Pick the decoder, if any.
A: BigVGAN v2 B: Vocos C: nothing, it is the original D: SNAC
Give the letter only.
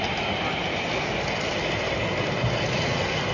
C